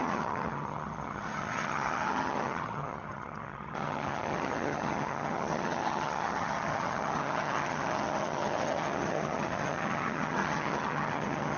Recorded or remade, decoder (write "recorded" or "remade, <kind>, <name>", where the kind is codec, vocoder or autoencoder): remade, vocoder, HiFi-GAN